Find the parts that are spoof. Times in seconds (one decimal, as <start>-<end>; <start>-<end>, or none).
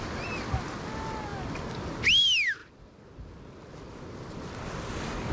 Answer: none